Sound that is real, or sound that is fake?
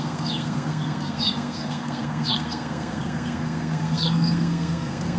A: fake